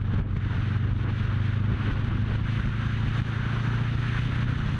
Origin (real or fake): real